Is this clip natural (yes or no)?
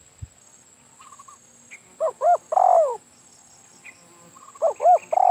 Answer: yes